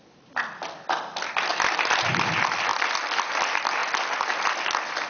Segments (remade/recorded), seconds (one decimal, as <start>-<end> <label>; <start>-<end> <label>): 0.0-5.1 recorded